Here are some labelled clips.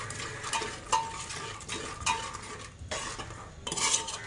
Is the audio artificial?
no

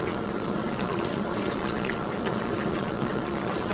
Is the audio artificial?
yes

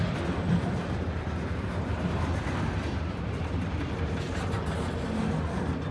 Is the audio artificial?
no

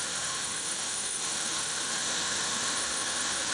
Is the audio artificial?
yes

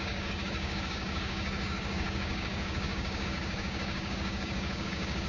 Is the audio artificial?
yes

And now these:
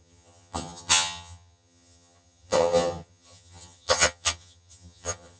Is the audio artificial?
yes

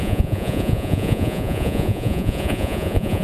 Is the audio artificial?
yes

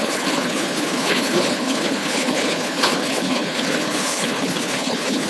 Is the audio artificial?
yes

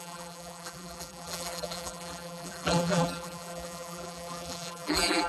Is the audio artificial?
yes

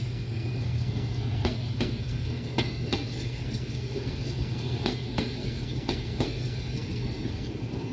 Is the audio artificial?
yes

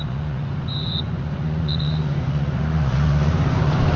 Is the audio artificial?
yes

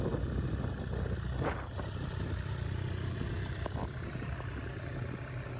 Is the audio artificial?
no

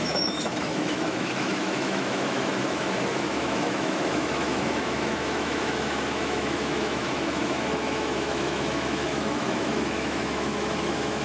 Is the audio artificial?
yes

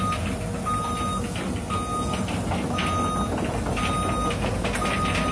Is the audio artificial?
no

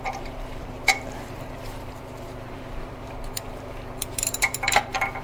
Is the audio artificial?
yes